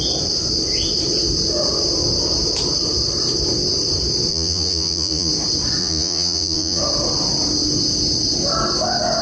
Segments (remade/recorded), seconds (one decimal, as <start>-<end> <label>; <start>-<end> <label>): 0.0-4.3 recorded; 4.3-5.3 remade; 5.3-5.8 recorded; 5.8-6.8 remade; 6.8-9.2 recorded